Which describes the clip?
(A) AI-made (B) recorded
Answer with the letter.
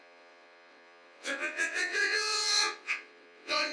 A